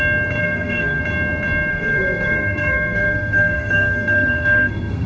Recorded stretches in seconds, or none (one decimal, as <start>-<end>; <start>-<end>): 0.0-0.4; 1.0-1.7